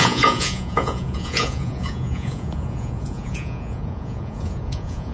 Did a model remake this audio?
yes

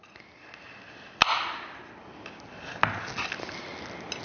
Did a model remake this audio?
no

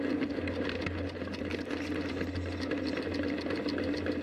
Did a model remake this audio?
no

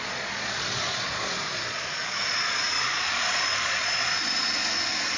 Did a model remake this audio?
yes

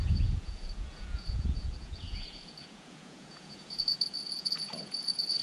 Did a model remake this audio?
yes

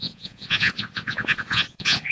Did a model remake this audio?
yes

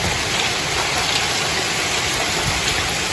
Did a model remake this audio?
no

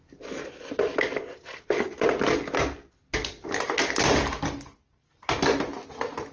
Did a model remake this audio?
no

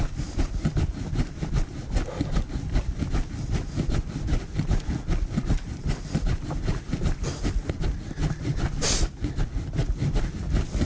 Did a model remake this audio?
no